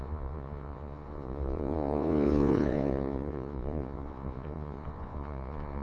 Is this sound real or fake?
fake